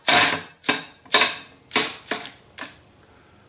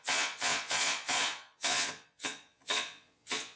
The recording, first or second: first